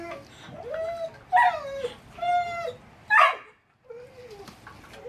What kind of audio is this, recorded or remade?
recorded